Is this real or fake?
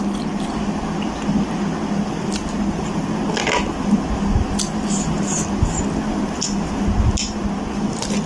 real